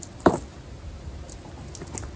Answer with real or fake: real